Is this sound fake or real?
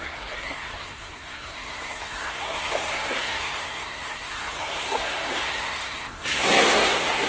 fake